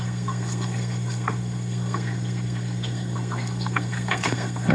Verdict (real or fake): fake